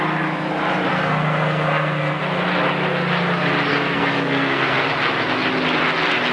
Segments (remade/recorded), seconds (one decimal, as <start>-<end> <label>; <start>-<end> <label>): 0.0-0.9 recorded; 0.9-2.2 remade; 2.2-3.7 recorded; 3.7-4.9 remade; 4.9-6.3 recorded